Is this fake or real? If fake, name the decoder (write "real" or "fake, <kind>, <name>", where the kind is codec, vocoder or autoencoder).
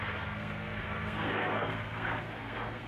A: fake, codec, SNAC